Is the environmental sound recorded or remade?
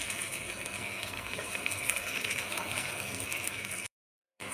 remade